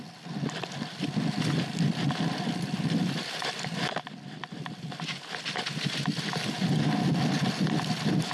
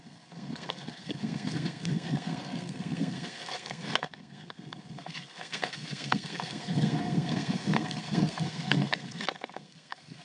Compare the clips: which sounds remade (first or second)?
second